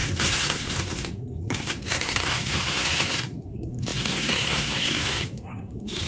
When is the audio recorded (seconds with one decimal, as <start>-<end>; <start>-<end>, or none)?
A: none